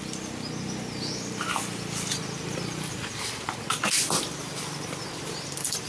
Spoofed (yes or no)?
no